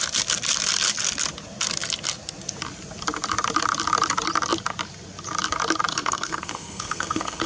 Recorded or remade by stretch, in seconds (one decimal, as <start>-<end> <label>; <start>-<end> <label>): 0.0-5.9 recorded; 5.9-7.5 remade